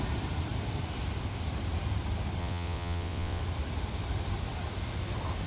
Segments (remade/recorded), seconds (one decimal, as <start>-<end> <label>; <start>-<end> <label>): 0.0-2.4 recorded; 2.4-3.4 remade; 3.4-5.5 recorded

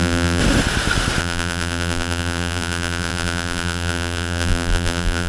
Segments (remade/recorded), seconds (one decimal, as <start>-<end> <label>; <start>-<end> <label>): 0.0-0.4 remade; 0.4-1.2 recorded; 1.2-5.3 remade

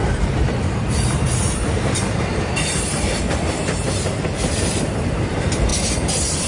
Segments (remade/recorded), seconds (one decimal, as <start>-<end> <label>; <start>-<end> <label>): 0.0-6.5 remade

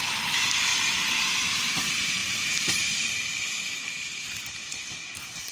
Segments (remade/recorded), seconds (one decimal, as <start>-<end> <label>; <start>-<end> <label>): 0.0-0.7 remade; 0.7-1.2 recorded; 1.2-5.5 remade